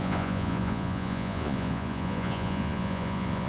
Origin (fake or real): fake